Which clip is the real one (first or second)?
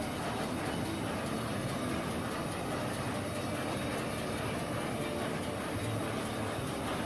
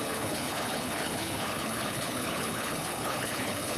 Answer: first